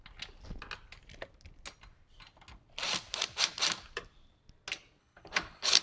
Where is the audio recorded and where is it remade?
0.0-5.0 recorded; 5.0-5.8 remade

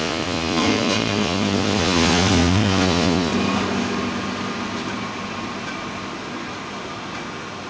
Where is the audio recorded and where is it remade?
0.0-3.3 remade; 3.3-7.7 recorded

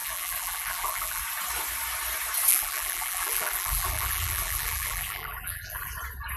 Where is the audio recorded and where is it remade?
0.0-1.2 remade; 1.2-2.5 recorded; 2.5-5.9 remade; 5.9-6.4 recorded

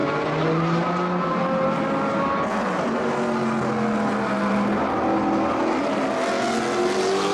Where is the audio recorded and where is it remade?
0.0-7.3 recorded

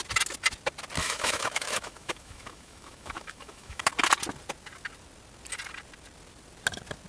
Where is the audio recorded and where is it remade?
0.0-1.0 recorded; 1.0-3.9 remade; 3.9-7.1 recorded